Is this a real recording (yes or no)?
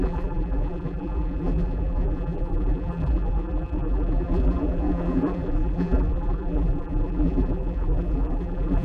no